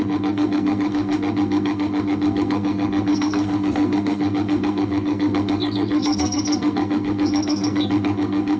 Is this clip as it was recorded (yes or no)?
no